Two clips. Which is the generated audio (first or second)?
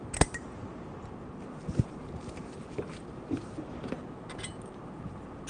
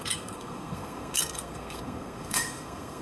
second